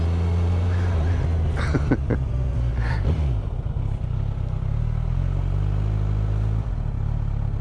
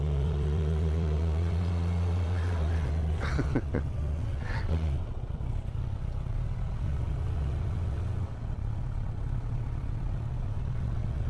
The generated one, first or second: second